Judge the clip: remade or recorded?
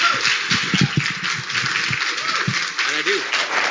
recorded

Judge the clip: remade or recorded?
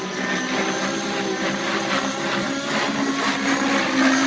recorded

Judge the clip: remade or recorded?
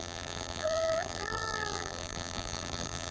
remade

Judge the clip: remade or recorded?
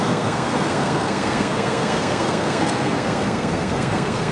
remade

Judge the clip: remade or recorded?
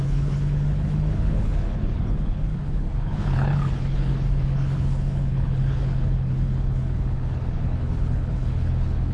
remade